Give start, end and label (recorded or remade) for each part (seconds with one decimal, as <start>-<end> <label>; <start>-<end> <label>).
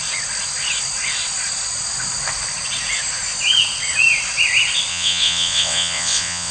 0.0-4.9 recorded; 4.9-6.5 remade